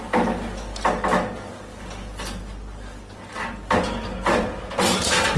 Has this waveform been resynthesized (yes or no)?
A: no